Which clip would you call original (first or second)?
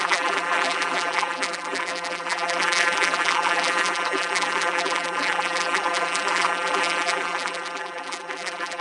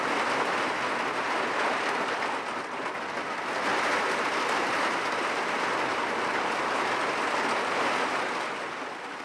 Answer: second